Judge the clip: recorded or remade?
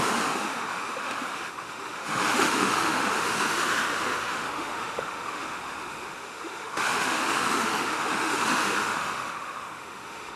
remade